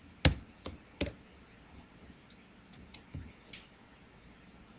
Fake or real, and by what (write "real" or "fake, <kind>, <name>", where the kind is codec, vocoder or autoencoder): real